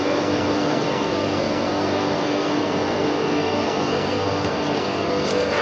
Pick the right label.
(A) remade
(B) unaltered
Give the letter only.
A